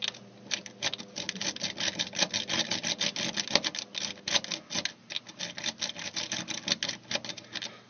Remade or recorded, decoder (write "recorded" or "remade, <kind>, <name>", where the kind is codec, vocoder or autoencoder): recorded